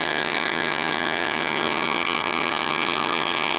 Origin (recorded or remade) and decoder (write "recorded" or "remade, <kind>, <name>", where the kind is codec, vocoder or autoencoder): remade, vocoder, HiFi-GAN